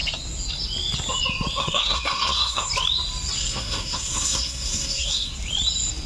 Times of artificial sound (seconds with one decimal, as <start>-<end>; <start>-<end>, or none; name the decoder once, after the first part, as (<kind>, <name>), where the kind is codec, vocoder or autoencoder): 1.6-2.7 (codec, SNAC); 3.4-5.3

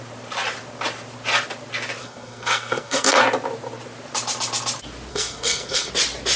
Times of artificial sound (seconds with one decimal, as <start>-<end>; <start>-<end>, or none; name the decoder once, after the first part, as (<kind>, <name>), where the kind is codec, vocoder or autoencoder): 2.0-3.2 (codec, SNAC); 5.1-5.9

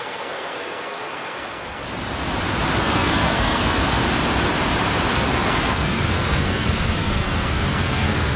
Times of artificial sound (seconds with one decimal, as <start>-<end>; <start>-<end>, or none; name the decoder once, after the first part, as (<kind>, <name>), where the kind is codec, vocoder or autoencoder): 0.0-1.8 (codec, SNAC); 2.8-4.0; 5.1-8.4

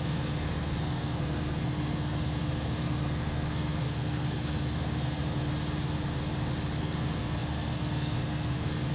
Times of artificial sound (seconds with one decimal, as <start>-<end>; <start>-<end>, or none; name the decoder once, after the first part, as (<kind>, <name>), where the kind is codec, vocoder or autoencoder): 0.0-5.2 (codec, SNAC); 6.8-8.9

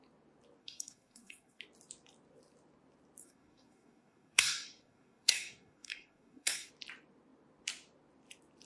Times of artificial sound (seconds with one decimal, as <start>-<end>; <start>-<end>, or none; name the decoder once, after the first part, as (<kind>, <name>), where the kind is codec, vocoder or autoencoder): 0.6-1.6 (codec, SNAC); 3.2-6.7

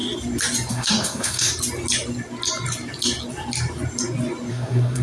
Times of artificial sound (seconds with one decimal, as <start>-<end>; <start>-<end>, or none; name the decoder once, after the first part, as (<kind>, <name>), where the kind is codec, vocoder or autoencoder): 0.7-1.5 (codec, SNAC); 4.5-5.0

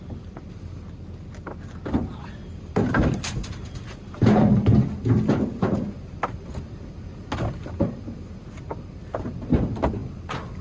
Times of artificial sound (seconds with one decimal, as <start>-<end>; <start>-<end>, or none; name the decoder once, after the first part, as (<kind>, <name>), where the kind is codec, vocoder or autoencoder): none